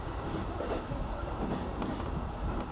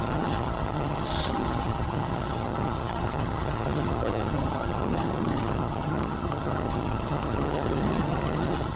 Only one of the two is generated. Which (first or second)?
second